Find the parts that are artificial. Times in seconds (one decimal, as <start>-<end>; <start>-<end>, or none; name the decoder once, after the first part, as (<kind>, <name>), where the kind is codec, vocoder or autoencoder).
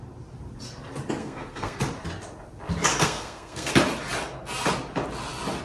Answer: 1.2-1.8 (codec, SNAC); 2.9-3.7